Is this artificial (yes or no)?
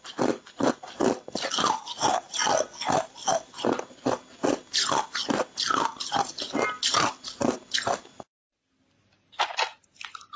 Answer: no